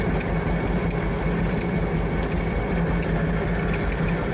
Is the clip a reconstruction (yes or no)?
no